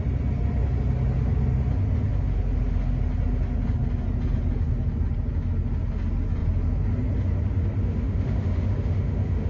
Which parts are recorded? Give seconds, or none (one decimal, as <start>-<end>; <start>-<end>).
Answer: 0.0-7.8